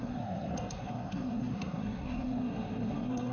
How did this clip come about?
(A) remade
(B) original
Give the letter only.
A